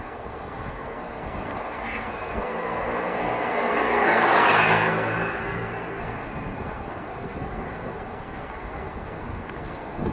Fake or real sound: fake